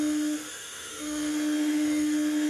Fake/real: fake